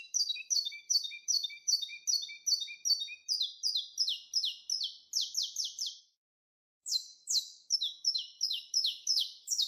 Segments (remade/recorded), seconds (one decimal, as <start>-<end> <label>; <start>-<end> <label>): 0.0-1.9 remade; 1.9-6.0 recorded; 6.0-9.7 remade